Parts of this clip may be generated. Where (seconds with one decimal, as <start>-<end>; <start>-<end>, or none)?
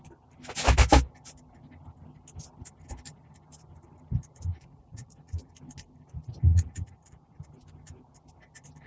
4.5-5.5; 6.5-7.4